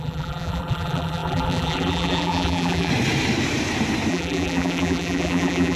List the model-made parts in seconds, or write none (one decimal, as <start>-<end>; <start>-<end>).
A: 0.0-2.9; 4.1-5.8